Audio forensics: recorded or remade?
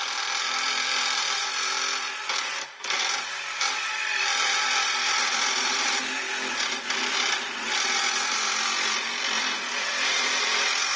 remade